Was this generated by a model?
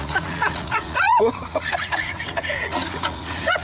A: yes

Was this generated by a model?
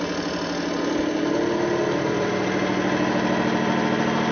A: no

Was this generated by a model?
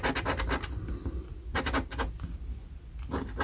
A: no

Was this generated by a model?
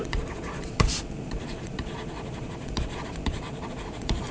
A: yes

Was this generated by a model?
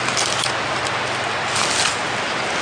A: no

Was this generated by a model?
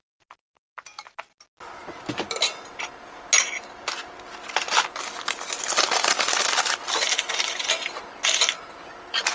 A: no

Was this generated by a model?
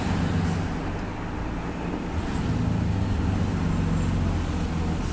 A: no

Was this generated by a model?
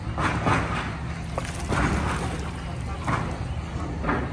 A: no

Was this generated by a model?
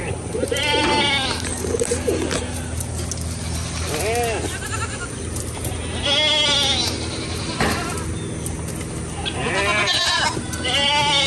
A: no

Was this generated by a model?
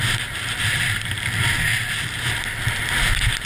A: no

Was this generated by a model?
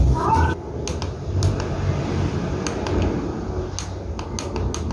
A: no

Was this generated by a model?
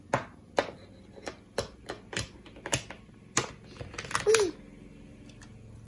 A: no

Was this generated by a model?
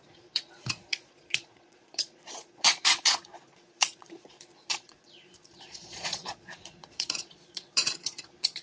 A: yes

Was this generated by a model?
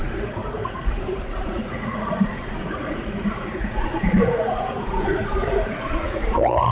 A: yes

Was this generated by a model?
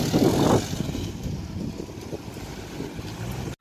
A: no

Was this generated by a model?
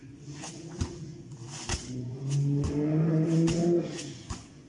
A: yes